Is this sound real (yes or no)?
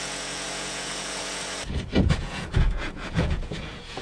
no